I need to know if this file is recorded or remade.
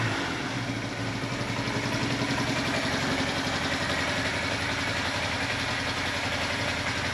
recorded